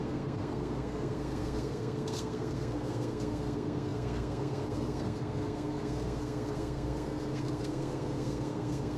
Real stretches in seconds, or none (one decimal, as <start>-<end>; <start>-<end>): none